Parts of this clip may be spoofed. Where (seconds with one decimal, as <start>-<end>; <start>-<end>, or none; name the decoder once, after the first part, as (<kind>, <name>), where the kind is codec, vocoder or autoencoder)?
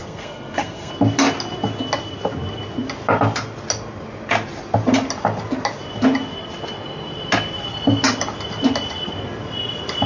0.0-0.9 (codec, SNAC)